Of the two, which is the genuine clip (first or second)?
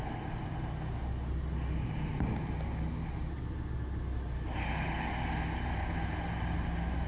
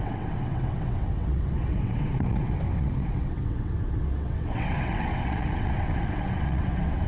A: first